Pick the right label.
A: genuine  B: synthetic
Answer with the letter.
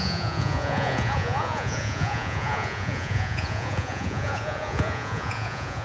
B